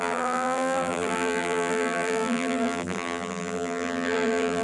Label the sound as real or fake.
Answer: fake